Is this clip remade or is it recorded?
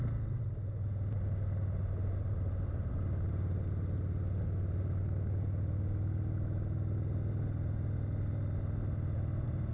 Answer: recorded